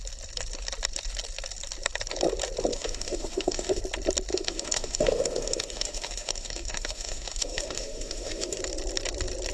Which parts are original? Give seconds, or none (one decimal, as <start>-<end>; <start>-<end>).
0.0-2.7; 3.8-4.3; 8.6-9.5